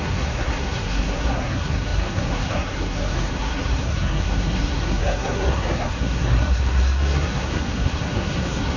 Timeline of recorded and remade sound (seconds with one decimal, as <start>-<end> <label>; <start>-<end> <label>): 0.0-8.8 remade